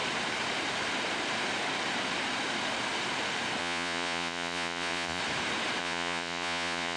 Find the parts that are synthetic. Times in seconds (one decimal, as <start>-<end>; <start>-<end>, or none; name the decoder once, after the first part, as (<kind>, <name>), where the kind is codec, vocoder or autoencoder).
3.6-5.2 (vocoder, Vocos); 5.8-7.0